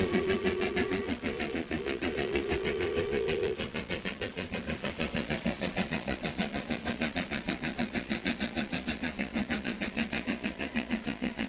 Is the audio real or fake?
fake